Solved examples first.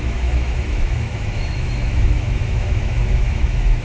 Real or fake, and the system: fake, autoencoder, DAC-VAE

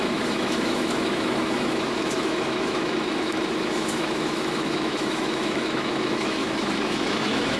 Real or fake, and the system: fake, autoencoder, DAC-VAE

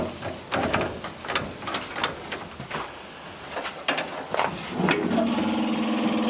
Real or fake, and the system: real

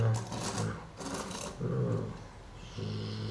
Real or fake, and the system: real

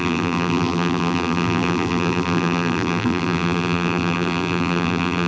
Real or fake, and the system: fake, vocoder, BigVGAN v2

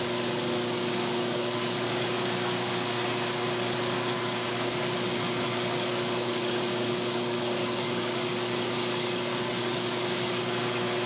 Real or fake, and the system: fake, codec, DAC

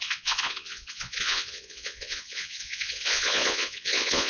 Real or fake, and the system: fake, vocoder, Vocos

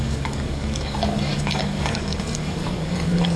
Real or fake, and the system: fake, codec, DAC